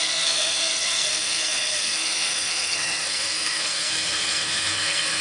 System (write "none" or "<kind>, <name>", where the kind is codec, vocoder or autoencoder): codec, SNAC